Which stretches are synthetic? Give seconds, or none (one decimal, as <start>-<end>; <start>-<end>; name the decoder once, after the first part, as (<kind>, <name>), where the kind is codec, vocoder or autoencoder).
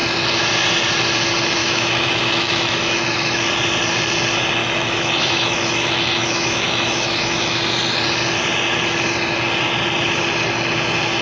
1.6-3.5 (autoencoder, DAC-VAE); 4.6-7.6